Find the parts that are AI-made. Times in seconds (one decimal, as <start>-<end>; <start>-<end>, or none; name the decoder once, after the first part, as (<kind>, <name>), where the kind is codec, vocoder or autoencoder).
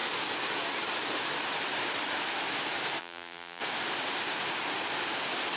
3.0-3.6 (vocoder, BigVGAN v2)